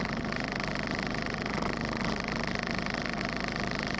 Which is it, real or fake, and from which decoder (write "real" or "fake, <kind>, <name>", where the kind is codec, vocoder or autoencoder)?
real